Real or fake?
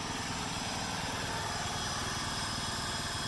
real